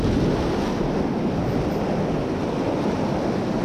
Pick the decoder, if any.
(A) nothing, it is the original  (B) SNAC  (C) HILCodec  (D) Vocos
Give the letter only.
A